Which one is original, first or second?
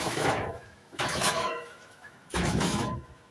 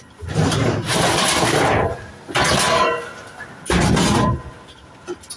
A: second